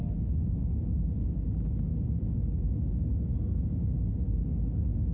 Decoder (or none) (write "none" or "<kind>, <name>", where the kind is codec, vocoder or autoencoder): none